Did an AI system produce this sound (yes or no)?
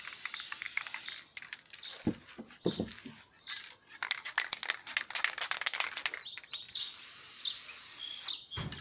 no